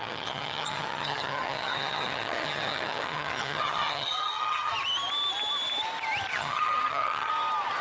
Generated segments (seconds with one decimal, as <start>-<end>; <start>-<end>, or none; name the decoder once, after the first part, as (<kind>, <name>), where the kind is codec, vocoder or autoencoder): 0.0-4.7 (vocoder, HiFi-GAN); 6.3-7.3